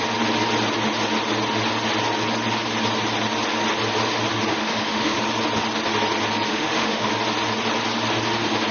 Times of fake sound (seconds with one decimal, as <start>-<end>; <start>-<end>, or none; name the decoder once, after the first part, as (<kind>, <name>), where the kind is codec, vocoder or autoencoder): 4.5-5.2 (autoencoder, DAC-VAE); 6.5-7.1